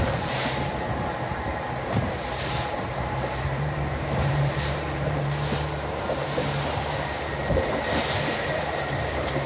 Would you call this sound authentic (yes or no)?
no